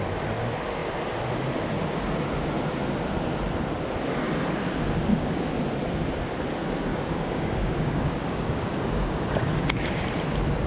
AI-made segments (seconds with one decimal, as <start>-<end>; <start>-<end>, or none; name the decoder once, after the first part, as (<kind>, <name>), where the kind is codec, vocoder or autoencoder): 5.1-5.6 (codec, DAC); 6.9-10.0